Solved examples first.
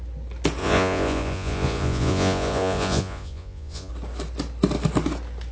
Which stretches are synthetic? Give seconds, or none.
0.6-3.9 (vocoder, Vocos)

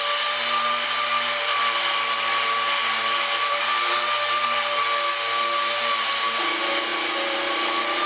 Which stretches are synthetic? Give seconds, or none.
0.0-4.8 (vocoder, BigVGAN v2); 5.9-8.1

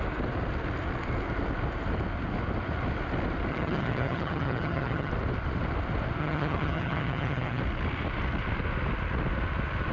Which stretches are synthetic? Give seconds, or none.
3.5-5.1 (vocoder, HiFi-GAN); 6.2-7.6

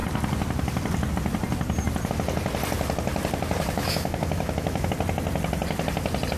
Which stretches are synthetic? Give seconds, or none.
3.8-4.9 (autoencoder, DAC-VAE)

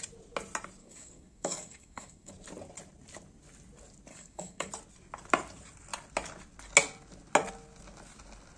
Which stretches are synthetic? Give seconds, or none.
0.8-2.3 (codec, DAC); 4.1-4.7

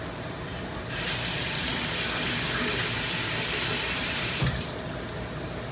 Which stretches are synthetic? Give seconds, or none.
0.0-1.7 (vocoder, BigVGAN v2); 3.7-5.7